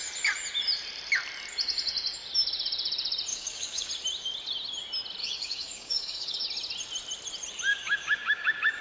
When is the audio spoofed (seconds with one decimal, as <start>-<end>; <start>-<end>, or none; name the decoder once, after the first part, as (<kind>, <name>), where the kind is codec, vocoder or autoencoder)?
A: 3.3-3.9 (codec, DAC); 5.2-6.4; 7.7-8.8